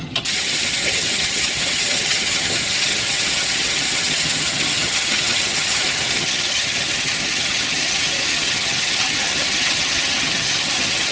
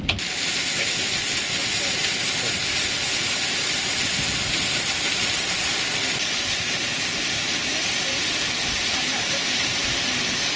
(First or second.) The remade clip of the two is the first